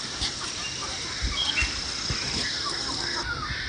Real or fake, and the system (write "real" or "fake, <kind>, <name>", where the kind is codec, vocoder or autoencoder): real